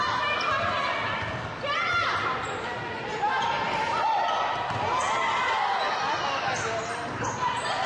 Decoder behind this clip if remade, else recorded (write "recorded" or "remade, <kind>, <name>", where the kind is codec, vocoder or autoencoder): recorded